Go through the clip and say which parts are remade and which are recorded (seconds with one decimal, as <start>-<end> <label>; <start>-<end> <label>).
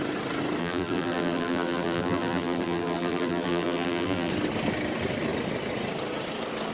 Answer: 0.0-0.6 recorded; 0.6-4.3 remade; 4.3-6.7 recorded